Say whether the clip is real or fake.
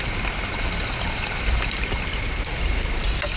real